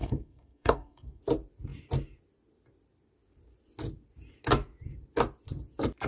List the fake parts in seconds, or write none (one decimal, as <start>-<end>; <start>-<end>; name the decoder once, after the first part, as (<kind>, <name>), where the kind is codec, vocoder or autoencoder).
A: 0.0-1.2 (codec, SNAC)